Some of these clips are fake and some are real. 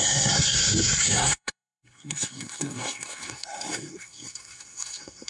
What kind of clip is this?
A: fake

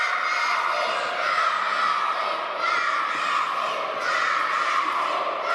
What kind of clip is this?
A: real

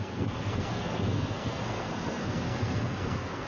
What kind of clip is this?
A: fake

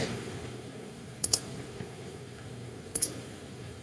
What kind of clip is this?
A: fake